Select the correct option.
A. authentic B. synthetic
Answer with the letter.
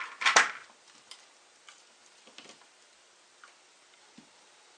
A